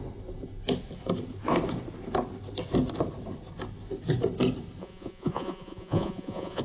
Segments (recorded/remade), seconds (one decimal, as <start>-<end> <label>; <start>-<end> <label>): 0.0-4.8 recorded; 4.8-6.6 remade